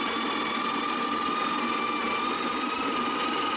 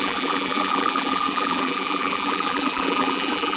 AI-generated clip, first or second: second